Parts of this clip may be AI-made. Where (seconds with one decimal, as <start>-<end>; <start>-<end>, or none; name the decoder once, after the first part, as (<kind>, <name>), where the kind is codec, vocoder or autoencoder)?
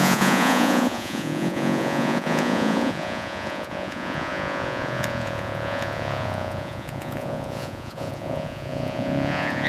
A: 0.0-9.7 (vocoder, Vocos)